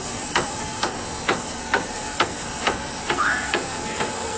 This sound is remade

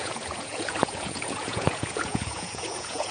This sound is remade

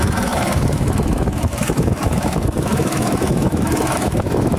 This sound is remade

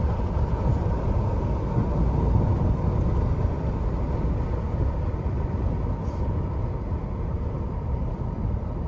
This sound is recorded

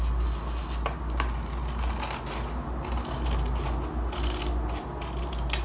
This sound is recorded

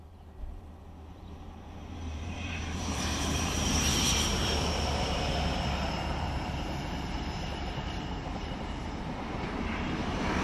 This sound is remade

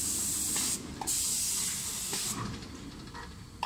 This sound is recorded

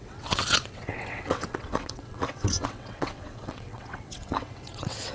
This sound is remade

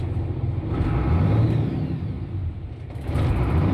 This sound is recorded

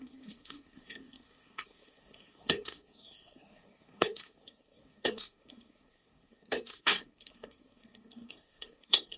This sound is remade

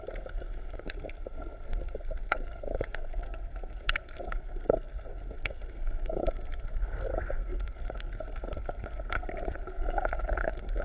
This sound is remade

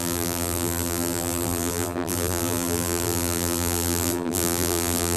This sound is remade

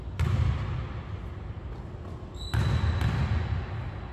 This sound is recorded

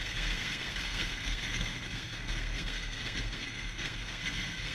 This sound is remade